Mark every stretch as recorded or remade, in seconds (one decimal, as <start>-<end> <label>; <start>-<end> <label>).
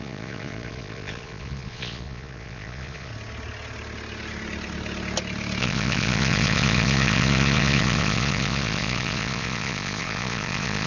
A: 0.0-3.1 remade; 3.1-5.6 recorded; 5.6-10.9 remade